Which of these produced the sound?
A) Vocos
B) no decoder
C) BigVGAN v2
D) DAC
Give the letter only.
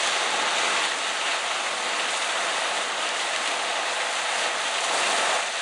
B